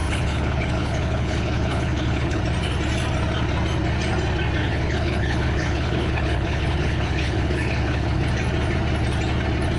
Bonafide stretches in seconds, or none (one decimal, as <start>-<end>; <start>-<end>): 2.4-4.6; 8.3-9.8

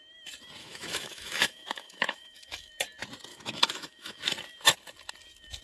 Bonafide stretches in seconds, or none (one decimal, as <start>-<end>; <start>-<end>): 0.0-0.6; 2.7-3.3; 4.2-5.6

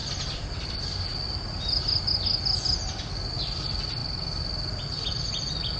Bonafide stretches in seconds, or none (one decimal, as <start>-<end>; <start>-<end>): 0.0-5.8

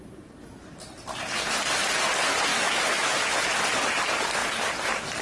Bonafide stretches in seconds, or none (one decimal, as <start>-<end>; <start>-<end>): 0.0-2.5; 3.3-5.2

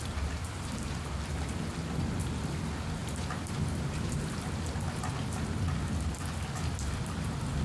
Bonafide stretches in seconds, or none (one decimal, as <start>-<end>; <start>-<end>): 0.0-0.4; 1.1-3.0; 4.6-7.6

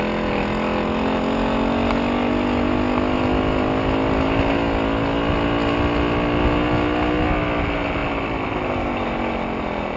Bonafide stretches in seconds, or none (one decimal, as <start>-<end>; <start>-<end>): 0.0-10.0

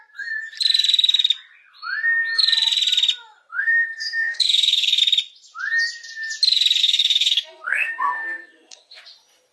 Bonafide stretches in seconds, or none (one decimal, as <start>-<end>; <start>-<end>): 0.0-3.5; 5.0-6.8; 9.0-9.5